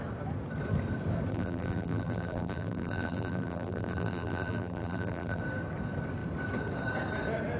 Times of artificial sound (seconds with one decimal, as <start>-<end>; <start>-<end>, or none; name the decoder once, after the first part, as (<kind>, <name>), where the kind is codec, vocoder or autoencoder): 1.3-5.4 (vocoder, BigVGAN v2)